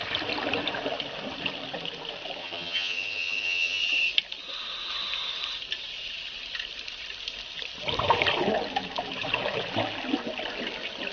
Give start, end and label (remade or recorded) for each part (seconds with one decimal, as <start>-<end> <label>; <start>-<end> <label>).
0.0-2.4 recorded; 2.4-3.8 remade; 3.8-11.1 recorded